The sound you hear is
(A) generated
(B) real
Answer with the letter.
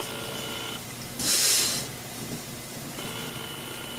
B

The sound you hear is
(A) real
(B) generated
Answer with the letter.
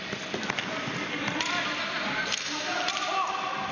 A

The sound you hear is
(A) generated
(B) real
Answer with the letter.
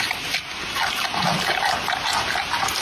B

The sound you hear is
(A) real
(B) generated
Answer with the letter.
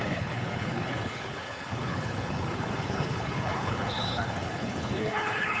B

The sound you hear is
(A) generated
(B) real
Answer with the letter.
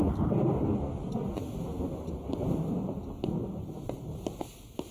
B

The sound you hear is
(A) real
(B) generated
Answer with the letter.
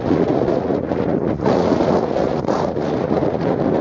B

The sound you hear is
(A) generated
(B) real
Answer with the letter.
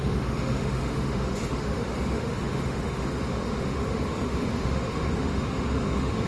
A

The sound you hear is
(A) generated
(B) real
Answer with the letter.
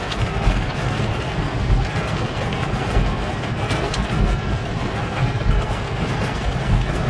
A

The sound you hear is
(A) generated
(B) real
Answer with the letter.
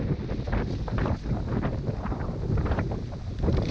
B